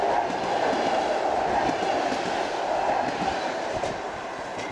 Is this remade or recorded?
recorded